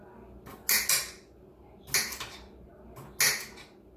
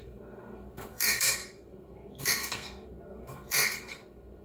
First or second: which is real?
first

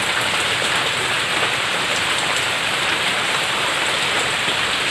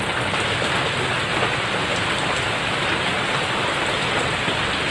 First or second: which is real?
second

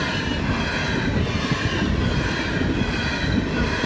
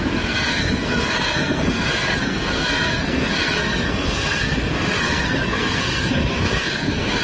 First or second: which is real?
first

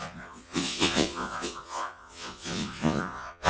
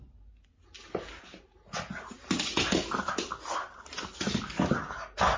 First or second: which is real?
second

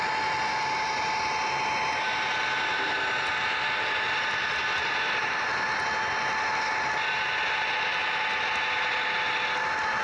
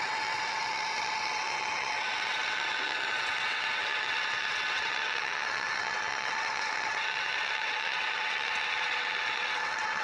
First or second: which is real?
first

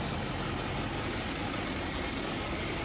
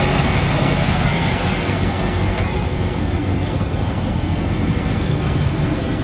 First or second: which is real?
first